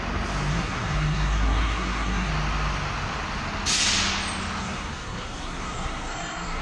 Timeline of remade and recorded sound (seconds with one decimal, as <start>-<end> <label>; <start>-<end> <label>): 0.0-0.5 recorded; 0.5-2.3 remade; 2.3-4.6 recorded; 4.6-6.6 remade